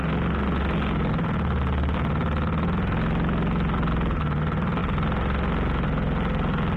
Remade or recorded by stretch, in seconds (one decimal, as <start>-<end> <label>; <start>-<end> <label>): 0.0-6.8 recorded